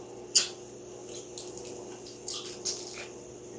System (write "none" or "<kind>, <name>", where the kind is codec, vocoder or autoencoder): none